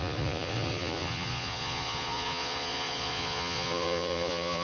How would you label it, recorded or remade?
remade